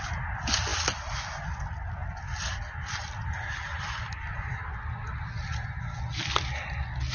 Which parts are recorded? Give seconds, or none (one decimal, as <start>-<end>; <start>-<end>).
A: 0.0-7.1